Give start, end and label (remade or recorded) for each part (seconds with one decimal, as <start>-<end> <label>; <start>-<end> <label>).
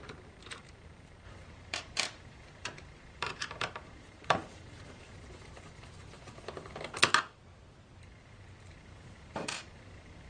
0.0-4.4 remade; 4.4-8.2 recorded; 8.2-10.3 remade